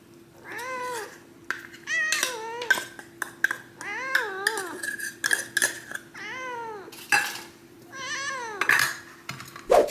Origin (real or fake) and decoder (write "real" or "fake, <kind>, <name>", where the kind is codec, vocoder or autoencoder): real